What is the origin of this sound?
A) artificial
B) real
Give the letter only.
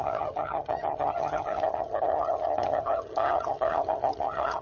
A